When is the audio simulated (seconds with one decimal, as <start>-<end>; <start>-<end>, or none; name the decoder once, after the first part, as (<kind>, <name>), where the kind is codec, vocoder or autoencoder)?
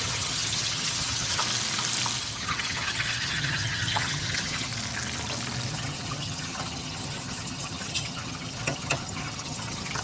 0.0-1.4 (vocoder, HiFi-GAN); 2.2-4.7; 5.7-10.0